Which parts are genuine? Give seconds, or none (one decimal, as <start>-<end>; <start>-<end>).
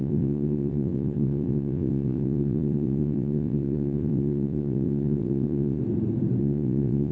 5.8-6.4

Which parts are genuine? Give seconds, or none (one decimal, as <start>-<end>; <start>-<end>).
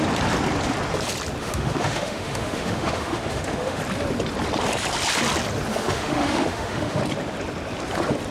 0.0-1.4; 3.8-5.7; 7.0-8.3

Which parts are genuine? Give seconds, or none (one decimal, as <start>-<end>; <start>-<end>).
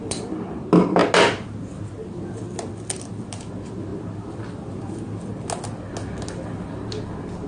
0.0-7.5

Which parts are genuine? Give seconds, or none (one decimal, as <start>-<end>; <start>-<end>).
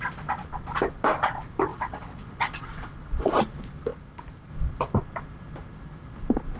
0.0-1.7; 3.4-6.6